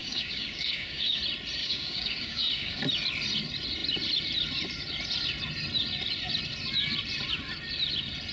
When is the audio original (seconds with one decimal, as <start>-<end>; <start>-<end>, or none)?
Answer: 1.2-1.6; 2.8-8.3